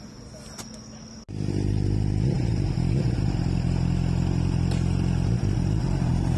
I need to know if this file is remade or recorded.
recorded